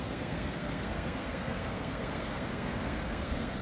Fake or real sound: fake